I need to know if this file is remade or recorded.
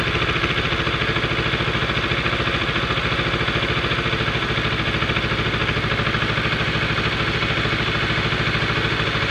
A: recorded